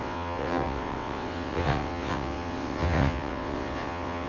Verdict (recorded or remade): remade